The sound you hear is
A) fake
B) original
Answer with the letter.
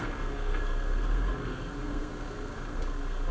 A